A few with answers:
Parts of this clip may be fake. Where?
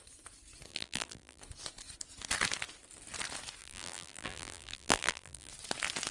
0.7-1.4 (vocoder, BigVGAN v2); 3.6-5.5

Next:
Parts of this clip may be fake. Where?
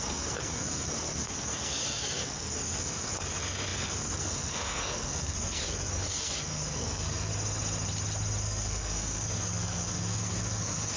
0.0-7.3 (codec, SNAC); 8.4-11.0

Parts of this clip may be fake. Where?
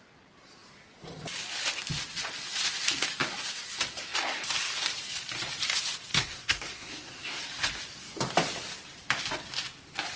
6.1-7.4 (codec, SNAC)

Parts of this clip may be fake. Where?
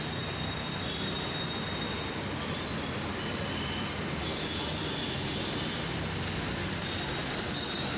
none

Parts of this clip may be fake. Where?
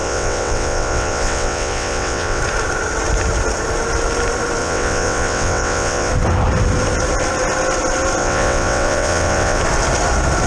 0.0-2.4 (vocoder, WaveNeXt); 4.6-6.1; 8.2-9.6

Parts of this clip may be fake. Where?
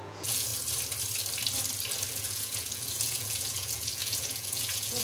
0.0-0.5 (vocoder, Vocos); 2.1-5.0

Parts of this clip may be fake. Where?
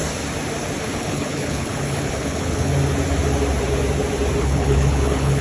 0.8-2.7 (codec, HILCodec); 4.4-5.4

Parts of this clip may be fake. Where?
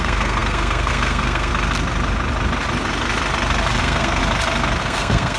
0.0-1.5 (codec, SNAC); 3.8-4.2; 4.8-5.4